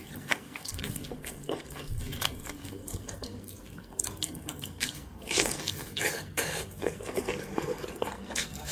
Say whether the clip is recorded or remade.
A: remade